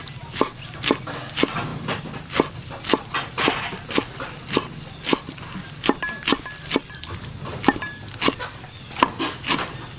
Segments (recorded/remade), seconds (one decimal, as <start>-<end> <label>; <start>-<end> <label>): 0.0-10.0 recorded